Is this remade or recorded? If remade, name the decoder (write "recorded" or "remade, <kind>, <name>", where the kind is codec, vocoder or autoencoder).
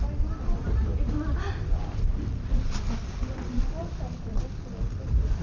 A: recorded